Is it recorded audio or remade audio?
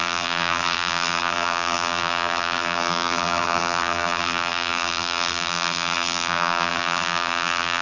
remade